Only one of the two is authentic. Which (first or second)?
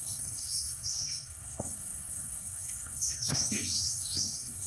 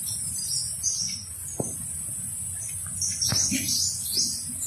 second